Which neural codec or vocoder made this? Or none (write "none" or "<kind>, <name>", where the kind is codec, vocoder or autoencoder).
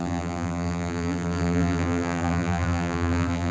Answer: vocoder, BigVGAN v2